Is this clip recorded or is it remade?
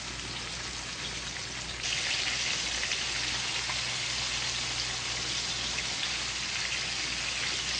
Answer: recorded